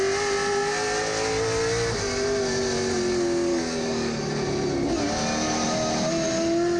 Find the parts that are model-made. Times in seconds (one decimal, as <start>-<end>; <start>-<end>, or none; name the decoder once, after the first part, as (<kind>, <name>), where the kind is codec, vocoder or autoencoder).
3.5-4.3 (codec, DAC)